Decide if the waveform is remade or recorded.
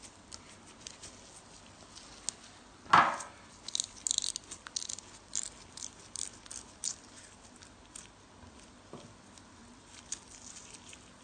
recorded